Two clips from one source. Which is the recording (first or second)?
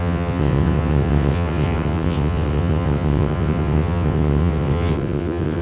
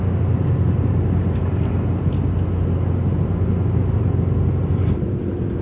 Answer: second